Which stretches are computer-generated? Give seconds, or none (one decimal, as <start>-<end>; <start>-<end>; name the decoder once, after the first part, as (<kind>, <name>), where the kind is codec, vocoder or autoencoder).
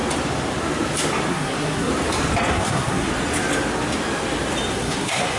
1.3-1.9 (codec, SNAC); 2.5-3.1; 4.7-5.4